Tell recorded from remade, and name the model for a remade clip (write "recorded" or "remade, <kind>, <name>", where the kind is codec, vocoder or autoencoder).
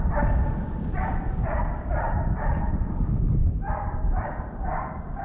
remade, vocoder, BigVGAN v2